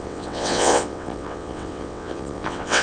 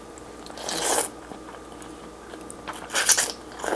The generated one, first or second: first